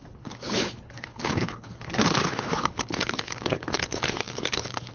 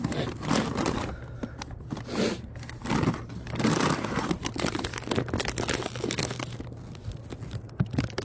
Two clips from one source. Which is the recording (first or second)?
second